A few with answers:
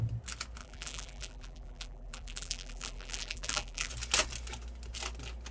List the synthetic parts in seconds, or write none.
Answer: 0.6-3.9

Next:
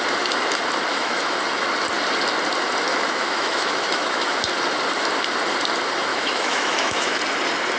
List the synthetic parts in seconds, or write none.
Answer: 0.9-1.4; 2.9-4.4; 6.1-7.2